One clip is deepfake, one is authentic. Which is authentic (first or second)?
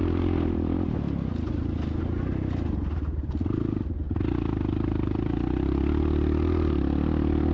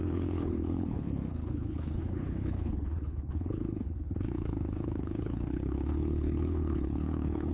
first